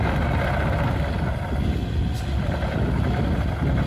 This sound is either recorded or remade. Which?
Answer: recorded